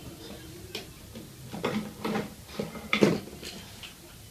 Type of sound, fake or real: real